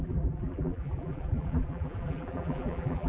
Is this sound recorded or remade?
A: remade